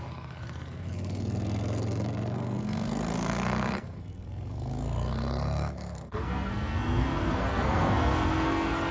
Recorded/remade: remade